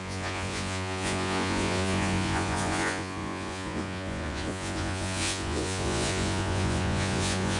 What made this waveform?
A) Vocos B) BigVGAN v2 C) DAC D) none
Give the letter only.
A